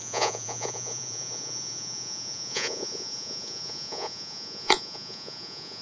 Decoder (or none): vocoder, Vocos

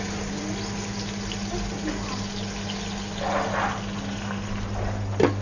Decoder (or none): none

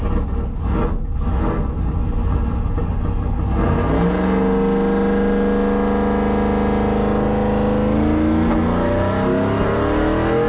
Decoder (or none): none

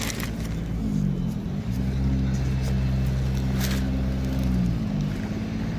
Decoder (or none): none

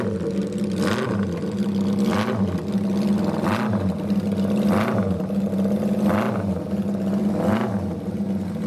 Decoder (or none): none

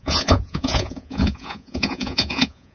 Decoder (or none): vocoder, Vocos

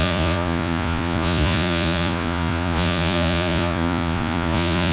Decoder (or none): vocoder, Vocos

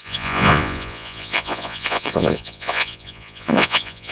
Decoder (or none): vocoder, Vocos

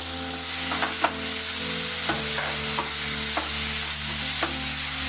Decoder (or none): none